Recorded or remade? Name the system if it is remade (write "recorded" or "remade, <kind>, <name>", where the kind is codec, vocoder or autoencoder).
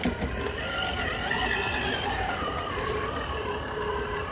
recorded